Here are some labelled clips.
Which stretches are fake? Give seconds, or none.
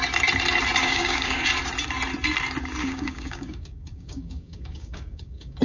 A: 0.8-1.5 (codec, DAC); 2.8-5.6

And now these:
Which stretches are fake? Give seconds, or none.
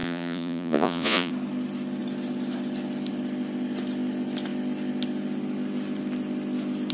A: 0.0-1.3 (vocoder, Vocos)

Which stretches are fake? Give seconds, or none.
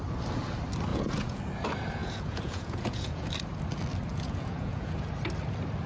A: 0.9-1.4 (vocoder, Vocos); 2.0-3.3; 4.1-5.1